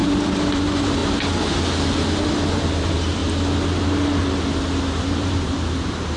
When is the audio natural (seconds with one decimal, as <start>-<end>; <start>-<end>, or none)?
1.0-2.5; 3.2-5.0